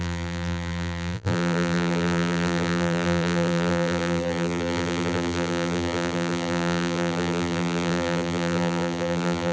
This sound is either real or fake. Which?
fake